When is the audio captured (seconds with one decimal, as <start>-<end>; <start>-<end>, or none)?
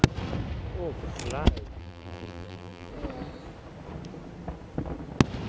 0.0-1.8; 2.9-5.5